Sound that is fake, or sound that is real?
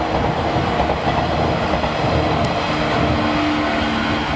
real